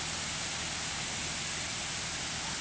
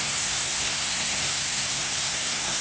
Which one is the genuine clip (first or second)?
first